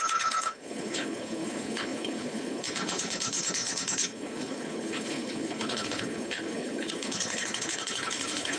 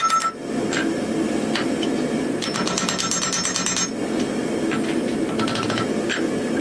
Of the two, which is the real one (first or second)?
second